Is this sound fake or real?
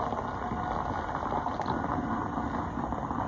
real